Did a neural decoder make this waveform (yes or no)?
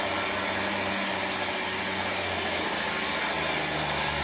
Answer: no